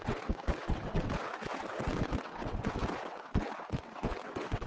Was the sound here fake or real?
fake